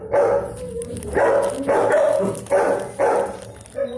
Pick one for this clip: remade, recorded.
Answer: recorded